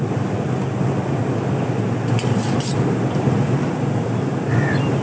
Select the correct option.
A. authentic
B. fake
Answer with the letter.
A